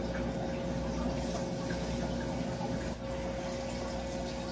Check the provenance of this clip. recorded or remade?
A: recorded